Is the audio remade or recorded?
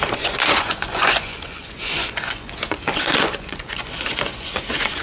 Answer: remade